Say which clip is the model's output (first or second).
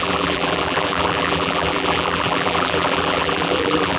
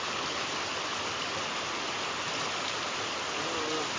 first